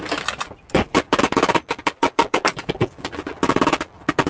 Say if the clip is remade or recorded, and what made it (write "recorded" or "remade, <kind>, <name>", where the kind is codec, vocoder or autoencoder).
remade, vocoder, BigVGAN v2